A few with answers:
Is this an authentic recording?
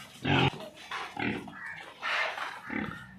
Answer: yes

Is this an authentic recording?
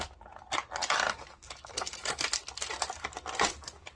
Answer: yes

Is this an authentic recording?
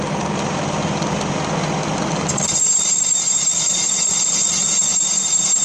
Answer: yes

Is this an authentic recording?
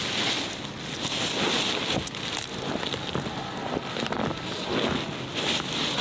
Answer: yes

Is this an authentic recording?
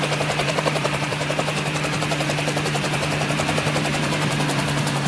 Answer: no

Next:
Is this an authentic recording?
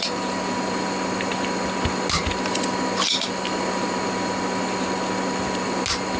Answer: yes